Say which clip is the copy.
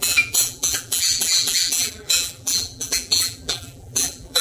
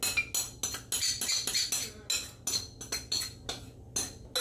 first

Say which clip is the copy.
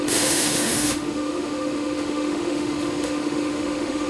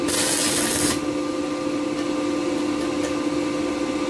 first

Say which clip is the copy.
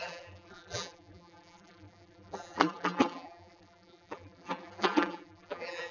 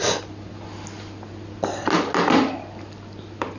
first